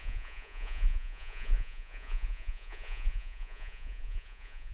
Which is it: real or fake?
fake